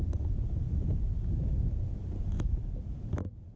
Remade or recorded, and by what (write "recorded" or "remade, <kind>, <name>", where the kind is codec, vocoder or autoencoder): recorded